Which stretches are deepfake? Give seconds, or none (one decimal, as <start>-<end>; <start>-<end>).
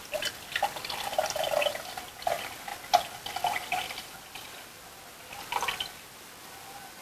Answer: none